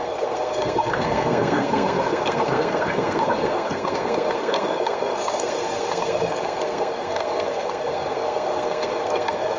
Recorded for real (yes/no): no